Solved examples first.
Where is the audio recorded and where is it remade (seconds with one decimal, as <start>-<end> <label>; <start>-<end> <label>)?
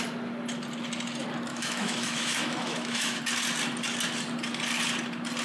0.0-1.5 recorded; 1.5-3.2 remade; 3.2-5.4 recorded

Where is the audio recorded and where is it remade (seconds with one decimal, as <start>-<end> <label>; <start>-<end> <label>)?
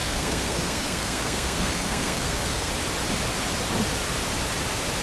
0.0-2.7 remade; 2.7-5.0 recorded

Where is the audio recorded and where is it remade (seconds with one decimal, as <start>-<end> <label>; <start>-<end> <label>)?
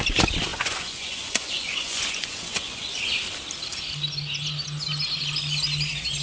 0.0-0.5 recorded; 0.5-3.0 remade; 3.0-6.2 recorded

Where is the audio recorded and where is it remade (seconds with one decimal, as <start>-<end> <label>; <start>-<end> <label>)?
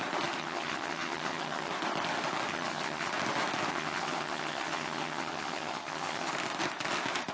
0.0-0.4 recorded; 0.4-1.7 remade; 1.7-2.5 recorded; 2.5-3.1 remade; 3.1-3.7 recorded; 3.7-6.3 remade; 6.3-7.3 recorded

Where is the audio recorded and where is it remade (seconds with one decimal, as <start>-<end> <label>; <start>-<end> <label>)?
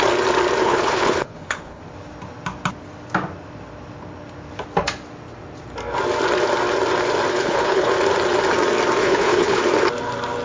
0.0-0.6 recorded; 0.6-1.8 remade; 1.8-7.3 recorded; 7.3-7.9 remade; 7.9-9.0 recorded; 9.0-9.6 remade; 9.6-10.4 recorded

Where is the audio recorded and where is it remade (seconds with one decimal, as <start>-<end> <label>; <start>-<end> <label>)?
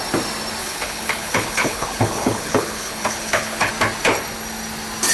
0.0-0.6 recorded; 0.6-3.7 remade; 3.7-5.1 recorded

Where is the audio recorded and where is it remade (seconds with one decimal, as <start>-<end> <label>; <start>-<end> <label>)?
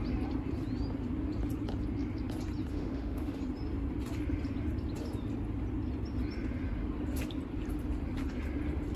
0.0-2.7 recorded; 2.7-3.4 remade; 3.4-9.0 recorded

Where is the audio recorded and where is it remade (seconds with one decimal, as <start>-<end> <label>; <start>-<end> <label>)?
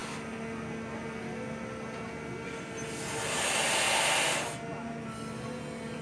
0.0-6.0 recorded